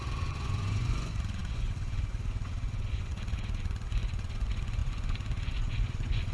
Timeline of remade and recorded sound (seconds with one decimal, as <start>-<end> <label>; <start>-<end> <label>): 0.0-6.3 remade